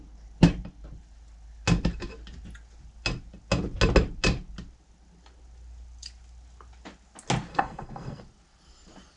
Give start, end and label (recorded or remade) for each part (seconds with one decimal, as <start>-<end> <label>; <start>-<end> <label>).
0.0-7.5 recorded; 7.5-8.2 remade; 8.2-9.2 recorded